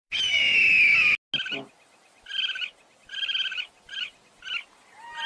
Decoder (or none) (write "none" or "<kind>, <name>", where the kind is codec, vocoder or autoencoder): none